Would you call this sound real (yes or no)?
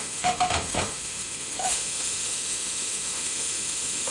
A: no